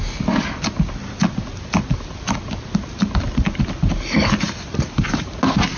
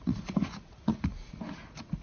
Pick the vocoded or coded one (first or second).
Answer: second